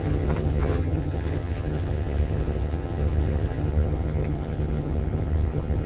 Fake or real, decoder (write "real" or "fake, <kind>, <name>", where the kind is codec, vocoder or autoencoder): fake, vocoder, HiFi-GAN